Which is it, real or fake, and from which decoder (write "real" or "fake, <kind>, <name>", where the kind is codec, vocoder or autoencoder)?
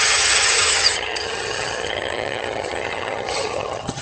fake, vocoder, HiFi-GAN